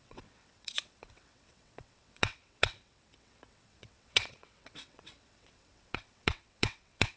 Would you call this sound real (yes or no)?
no